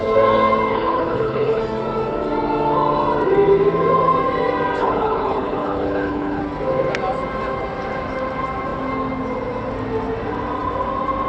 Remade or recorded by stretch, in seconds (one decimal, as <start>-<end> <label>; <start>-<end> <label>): 0.0-0.7 recorded; 0.7-1.6 remade; 1.6-4.8 recorded; 4.8-6.4 remade; 6.4-11.3 recorded